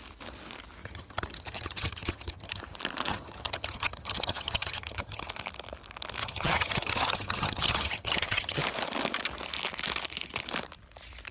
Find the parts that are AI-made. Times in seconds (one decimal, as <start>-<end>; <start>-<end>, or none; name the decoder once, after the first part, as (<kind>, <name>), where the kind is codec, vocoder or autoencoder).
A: 0.8-2.6 (vocoder, HiFi-GAN); 3.1-5.3; 6.2-8.6